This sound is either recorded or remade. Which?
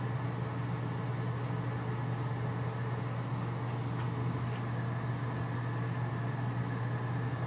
recorded